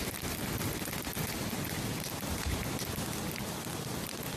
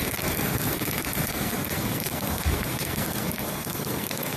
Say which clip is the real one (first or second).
first